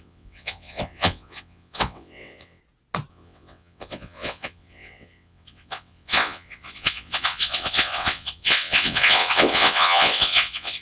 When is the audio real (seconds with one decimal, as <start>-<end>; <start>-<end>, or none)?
2.6-3.1